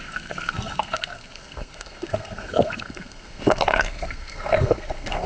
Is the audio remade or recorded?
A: remade